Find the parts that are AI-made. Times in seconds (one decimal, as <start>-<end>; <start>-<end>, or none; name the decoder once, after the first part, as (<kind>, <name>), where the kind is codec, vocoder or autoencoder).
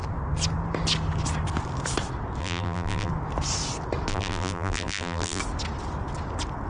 2.4-3.1 (vocoder, BigVGAN v2); 4.1-5.4